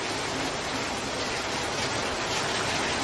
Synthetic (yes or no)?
no